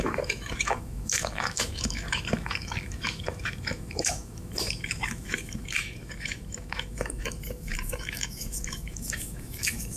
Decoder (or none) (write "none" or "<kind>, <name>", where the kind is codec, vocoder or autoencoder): autoencoder, DAC-VAE